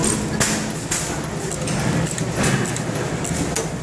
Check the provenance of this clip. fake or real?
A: real